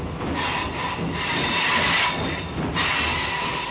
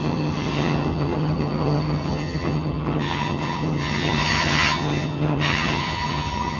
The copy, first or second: second